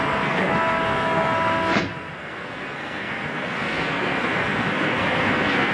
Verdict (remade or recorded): remade